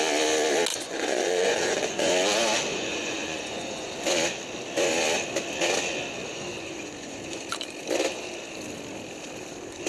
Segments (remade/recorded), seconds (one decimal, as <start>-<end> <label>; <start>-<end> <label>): 0.0-0.7 recorded; 0.7-2.1 remade; 2.1-2.7 recorded; 2.7-3.9 remade; 3.9-6.3 recorded; 6.3-7.8 remade; 7.8-9.9 recorded